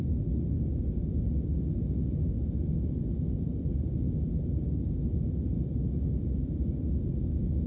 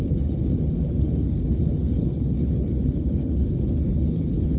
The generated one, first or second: second